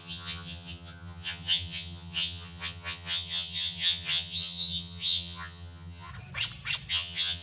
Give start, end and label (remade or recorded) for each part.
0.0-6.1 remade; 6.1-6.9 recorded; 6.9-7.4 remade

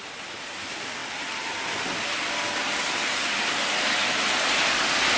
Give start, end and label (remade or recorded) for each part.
0.0-5.2 recorded

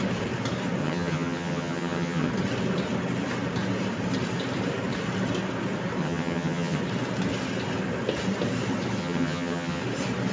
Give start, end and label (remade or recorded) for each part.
0.0-0.8 recorded; 0.8-2.3 remade; 2.3-6.0 recorded; 6.0-6.8 remade; 6.8-9.0 recorded; 9.0-9.8 remade; 9.8-10.3 recorded

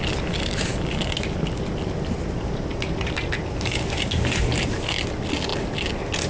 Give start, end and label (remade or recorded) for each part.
0.0-6.3 recorded